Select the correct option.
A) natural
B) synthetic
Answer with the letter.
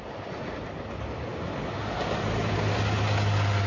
A